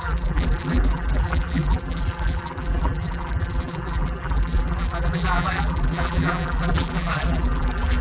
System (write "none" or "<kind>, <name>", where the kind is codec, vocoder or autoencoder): vocoder, BigVGAN v2